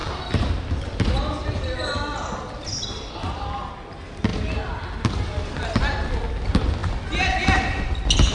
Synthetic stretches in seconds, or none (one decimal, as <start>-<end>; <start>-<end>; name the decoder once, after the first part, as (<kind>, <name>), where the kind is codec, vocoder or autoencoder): none